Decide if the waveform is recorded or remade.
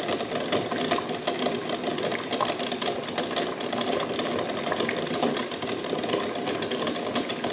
recorded